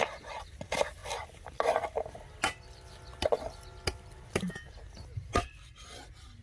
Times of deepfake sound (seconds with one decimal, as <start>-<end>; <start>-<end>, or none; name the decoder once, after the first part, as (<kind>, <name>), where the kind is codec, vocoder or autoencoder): 1.0-4.8 (vocoder, BigVGAN v2)

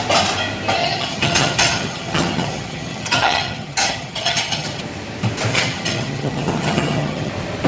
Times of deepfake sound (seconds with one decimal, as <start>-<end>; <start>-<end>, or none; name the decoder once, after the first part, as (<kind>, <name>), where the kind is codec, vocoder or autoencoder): 0.8-4.8 (vocoder, HiFi-GAN); 5.5-7.3

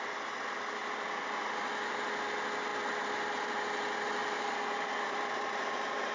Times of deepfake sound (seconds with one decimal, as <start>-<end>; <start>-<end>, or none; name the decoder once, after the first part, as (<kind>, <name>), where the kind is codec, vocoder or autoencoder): none

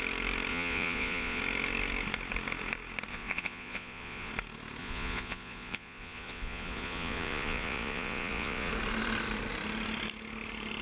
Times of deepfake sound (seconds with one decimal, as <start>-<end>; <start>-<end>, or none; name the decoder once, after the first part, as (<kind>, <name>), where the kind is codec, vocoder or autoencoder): 0.5-1.4 (vocoder, Vocos); 3.1-4.3; 4.8-8.7